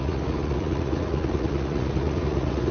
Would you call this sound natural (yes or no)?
no